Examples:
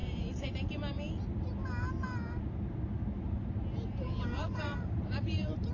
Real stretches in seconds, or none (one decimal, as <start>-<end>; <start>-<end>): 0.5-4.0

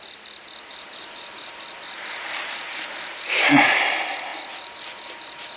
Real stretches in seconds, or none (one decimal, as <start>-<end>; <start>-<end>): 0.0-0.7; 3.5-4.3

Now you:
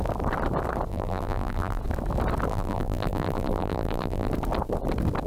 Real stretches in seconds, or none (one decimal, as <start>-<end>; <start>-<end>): 0.0-0.9; 1.8-2.5; 4.3-5.3

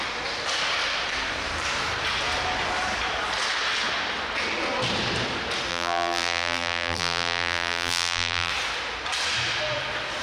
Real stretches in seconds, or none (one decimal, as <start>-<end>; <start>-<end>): 0.0-5.7; 8.5-10.2

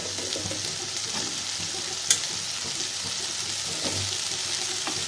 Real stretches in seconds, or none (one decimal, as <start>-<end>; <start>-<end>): 0.0-5.1

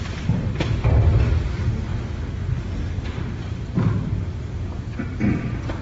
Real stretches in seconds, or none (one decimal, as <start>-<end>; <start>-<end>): 1.9-5.8